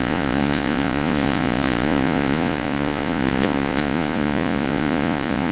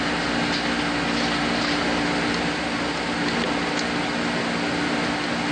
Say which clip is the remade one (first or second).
first